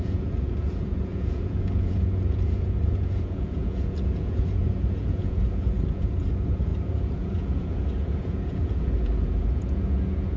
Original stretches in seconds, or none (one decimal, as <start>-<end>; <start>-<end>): none